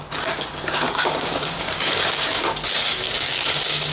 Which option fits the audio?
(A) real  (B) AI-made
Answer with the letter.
B